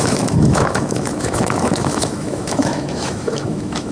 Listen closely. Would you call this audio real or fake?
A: fake